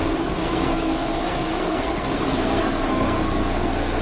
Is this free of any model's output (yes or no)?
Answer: no